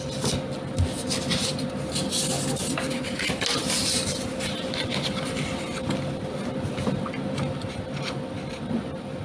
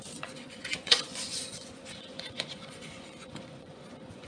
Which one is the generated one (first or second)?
second